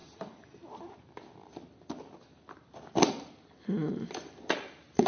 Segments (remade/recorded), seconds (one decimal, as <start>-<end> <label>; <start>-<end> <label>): 0.0-5.1 recorded